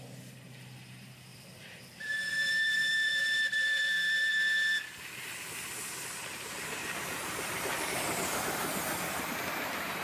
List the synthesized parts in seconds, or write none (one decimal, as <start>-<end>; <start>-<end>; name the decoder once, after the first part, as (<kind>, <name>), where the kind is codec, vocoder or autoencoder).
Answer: 1.3-4.3 (vocoder, BigVGAN v2)